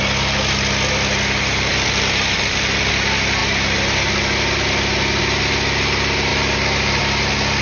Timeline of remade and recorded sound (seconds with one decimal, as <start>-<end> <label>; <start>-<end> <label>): 0.0-1.7 recorded; 1.7-2.9 remade; 2.9-7.6 recorded